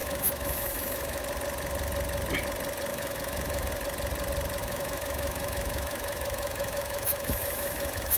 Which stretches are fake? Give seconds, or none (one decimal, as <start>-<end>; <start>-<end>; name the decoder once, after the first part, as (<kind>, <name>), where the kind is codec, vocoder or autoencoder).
0.0-1.2 (autoencoder, DAC-VAE); 2.9-3.7; 4.6-8.2

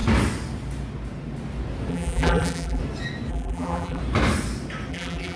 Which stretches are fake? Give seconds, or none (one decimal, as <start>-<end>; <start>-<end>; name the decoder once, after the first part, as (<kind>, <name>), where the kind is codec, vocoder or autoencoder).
1.9-2.8 (vocoder, BigVGAN v2); 3.3-4.0; 4.9-5.4

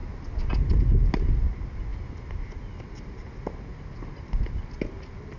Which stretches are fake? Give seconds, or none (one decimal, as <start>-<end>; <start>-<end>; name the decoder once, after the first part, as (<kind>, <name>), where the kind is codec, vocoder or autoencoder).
none

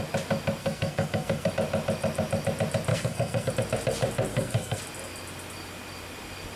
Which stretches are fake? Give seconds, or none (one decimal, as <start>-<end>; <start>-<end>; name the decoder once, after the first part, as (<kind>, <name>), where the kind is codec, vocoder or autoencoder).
0.6-1.5 (codec, SNAC); 2.9-3.5; 4.3-4.8

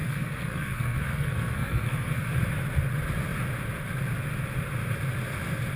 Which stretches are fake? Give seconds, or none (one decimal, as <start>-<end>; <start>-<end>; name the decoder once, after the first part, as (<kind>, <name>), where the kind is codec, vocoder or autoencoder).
0.0-2.2 (codec, SNAC)

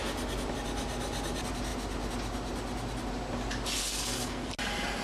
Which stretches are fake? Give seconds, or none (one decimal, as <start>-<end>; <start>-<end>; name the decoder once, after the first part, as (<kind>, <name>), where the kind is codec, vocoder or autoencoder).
3.8-4.5 (codec, SNAC)

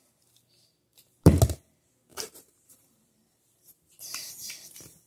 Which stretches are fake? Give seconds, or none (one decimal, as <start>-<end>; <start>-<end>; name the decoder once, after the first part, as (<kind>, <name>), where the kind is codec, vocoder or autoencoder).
0.9-1.4 (vocoder, BigVGAN v2); 2.1-4.5